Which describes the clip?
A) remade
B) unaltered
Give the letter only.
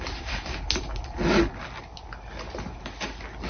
B